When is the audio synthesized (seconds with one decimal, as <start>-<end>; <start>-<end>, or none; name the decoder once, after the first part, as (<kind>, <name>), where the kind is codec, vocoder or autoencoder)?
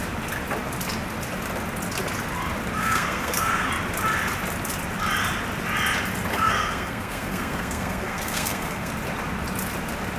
2.8-3.7 (codec, SNAC); 6.3-8.9